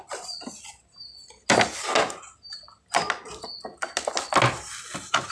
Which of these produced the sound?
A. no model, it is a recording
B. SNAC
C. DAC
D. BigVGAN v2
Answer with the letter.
A